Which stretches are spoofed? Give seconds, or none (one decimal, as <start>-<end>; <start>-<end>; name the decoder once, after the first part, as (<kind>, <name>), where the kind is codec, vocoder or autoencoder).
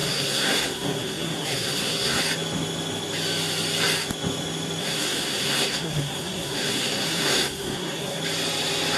0.0-2.2 (codec, SNAC); 4.8-8.2